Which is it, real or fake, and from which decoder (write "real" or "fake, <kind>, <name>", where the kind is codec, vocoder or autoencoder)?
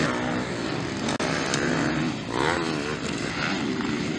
real